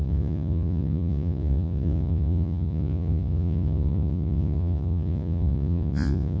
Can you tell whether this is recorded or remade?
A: remade